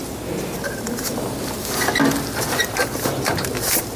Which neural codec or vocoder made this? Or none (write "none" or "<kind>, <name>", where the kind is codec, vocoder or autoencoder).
none